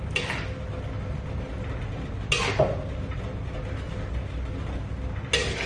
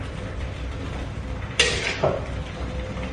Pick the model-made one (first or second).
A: second